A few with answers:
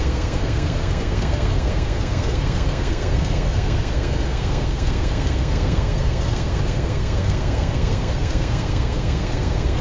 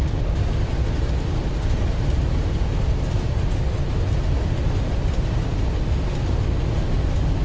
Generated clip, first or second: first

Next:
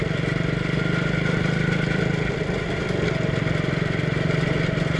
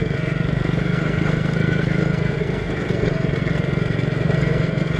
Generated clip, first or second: second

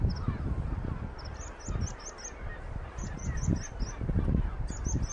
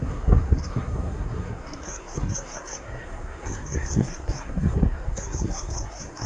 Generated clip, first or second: second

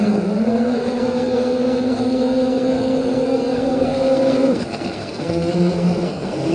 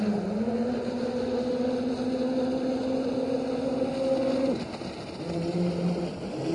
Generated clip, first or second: first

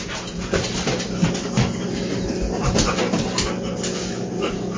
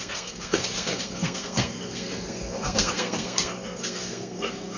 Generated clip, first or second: second